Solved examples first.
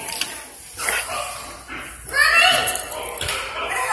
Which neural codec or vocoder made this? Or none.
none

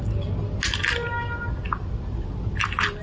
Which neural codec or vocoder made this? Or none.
none